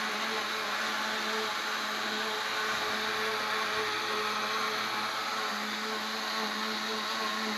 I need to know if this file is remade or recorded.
recorded